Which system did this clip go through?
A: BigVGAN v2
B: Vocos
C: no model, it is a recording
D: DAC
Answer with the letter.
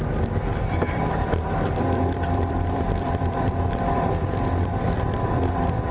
A